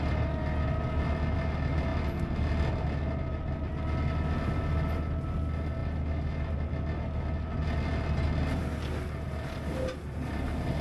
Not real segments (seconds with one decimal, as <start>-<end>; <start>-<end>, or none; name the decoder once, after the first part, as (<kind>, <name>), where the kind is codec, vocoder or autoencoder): none

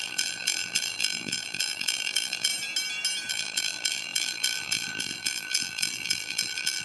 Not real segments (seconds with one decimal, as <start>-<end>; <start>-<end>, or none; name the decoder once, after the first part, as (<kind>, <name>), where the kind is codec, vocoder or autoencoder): 0.0-2.5 (vocoder, BigVGAN v2); 3.3-6.8

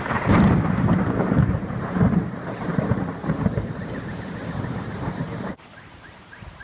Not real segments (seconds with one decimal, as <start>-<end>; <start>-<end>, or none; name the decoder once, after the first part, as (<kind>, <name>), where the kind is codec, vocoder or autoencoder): 0.0-6.6 (vocoder, BigVGAN v2)